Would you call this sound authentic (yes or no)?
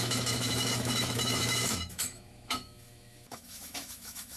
no